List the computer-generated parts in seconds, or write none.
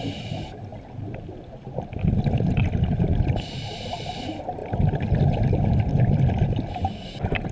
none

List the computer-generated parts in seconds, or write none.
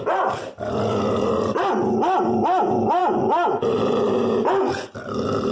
none